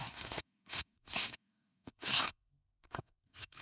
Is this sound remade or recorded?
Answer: remade